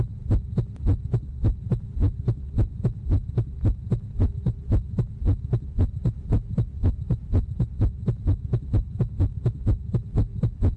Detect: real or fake real